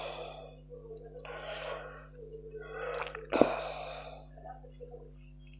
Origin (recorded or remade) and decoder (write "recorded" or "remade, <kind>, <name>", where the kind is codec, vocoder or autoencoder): recorded